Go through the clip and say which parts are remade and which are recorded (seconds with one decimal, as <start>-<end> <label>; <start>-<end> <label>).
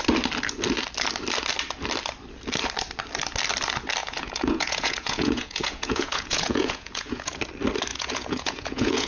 0.0-4.0 recorded; 4.0-7.4 remade; 7.4-7.9 recorded; 7.9-9.1 remade